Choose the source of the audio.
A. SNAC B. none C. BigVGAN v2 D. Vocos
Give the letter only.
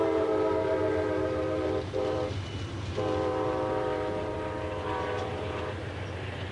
C